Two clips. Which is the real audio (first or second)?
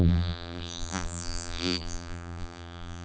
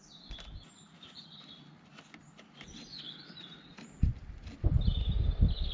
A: second